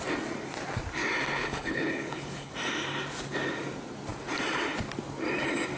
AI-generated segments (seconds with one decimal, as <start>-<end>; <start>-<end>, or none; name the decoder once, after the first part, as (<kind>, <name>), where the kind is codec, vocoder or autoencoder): 1.4-2.5 (codec, HILCodec)